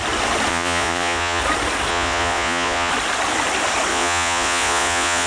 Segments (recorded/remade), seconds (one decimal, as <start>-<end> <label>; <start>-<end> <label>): 0.0-0.5 recorded; 0.5-1.4 remade; 1.4-1.9 recorded; 1.9-2.9 remade; 2.9-3.9 recorded; 3.9-5.3 remade